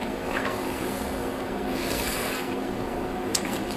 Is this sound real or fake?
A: fake